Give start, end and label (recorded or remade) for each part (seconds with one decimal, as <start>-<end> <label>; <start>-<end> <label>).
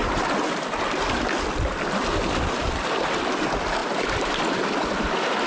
0.0-5.5 recorded